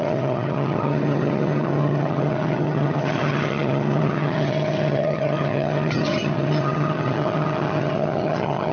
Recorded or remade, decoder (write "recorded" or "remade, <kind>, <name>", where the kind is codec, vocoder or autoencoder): remade, vocoder, HiFi-GAN